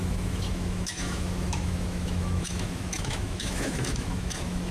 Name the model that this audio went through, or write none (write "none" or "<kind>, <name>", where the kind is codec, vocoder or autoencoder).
autoencoder, DAC-VAE